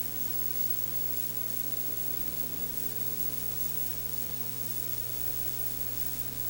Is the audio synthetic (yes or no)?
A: yes